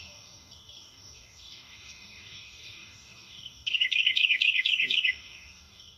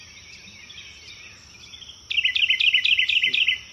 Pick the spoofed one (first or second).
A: first